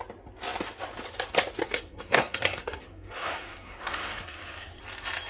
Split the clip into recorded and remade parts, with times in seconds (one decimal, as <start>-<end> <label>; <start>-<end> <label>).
0.0-1.6 recorded; 1.6-4.8 remade; 4.8-5.3 recorded